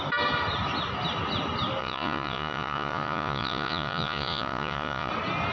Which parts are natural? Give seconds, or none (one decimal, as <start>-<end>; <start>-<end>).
0.0-1.8; 5.1-5.5